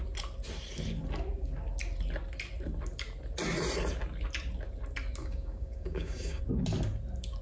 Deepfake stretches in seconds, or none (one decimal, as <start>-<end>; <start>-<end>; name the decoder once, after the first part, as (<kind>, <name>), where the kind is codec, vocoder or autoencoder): 5.2-6.4 (codec, DAC)